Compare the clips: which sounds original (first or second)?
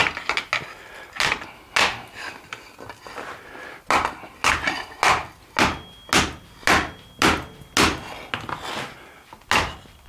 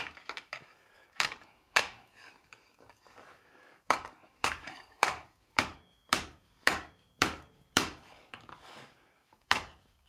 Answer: first